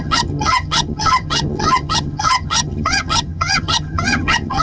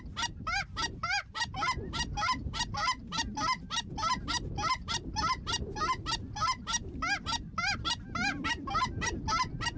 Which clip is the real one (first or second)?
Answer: second